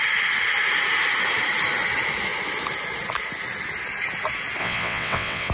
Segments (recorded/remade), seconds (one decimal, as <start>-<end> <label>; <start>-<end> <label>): 0.0-4.6 recorded; 4.6-5.5 remade